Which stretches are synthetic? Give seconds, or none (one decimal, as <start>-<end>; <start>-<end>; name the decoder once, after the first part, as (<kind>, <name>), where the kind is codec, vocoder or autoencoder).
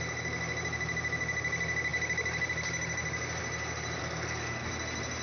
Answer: 4.0-4.7 (codec, SNAC)